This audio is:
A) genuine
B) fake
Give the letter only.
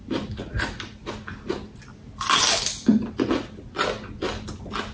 A